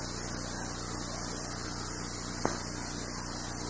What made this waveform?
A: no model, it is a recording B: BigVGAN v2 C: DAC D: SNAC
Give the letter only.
A